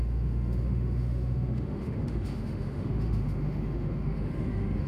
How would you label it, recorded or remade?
remade